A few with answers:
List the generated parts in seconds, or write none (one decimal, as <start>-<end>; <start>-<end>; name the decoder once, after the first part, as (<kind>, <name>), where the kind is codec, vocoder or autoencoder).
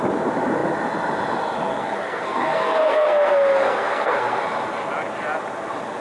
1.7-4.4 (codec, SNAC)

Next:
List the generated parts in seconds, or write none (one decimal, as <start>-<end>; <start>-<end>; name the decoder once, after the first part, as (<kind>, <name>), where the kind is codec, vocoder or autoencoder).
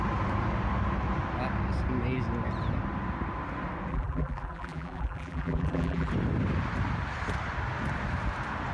3.9-6.1 (vocoder, BigVGAN v2)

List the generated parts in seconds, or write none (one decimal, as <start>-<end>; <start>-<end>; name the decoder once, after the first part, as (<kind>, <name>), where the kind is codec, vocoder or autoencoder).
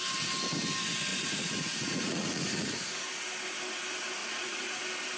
1.1-3.1 (vocoder, Vocos); 4.2-4.8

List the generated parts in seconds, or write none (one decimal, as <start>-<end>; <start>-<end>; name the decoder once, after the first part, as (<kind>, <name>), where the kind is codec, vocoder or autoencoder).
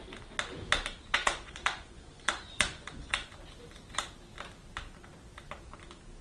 1.1-3.3 (vocoder, Vocos)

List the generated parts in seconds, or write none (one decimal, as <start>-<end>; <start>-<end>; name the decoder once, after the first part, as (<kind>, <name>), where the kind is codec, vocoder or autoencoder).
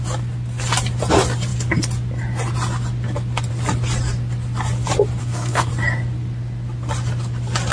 5.2-5.7 (codec, SNAC)